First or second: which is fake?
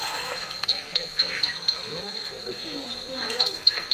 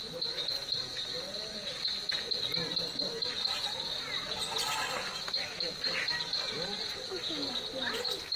first